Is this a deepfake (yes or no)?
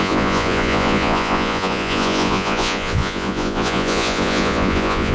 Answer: yes